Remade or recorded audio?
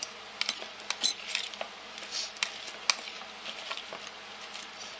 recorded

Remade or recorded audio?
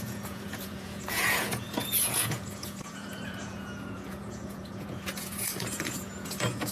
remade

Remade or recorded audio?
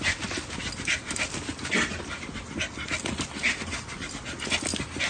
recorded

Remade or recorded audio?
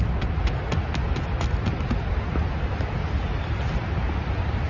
recorded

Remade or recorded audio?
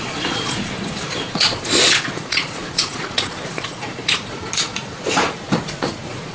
remade